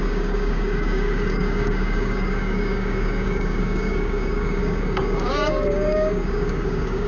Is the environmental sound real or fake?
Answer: fake